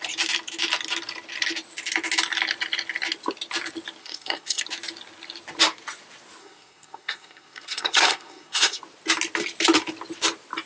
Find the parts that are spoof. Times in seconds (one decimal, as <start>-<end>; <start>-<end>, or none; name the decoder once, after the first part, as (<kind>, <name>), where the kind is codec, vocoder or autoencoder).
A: 4.0-4.6 (codec, SNAC); 6.4-8.8